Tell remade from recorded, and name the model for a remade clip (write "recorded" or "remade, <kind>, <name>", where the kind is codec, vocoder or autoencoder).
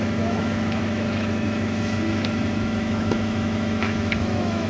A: remade, autoencoder, DAC-VAE